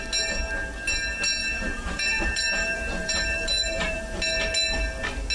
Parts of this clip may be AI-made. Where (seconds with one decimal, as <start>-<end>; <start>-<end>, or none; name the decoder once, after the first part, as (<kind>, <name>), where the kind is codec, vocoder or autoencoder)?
1.4-4.0 (vocoder, BigVGAN v2)